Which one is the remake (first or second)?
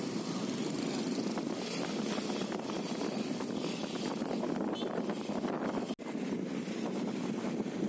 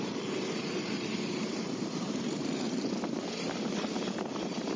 second